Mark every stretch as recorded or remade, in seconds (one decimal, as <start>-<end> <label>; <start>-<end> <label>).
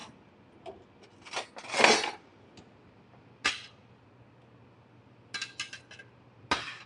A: 0.0-6.9 recorded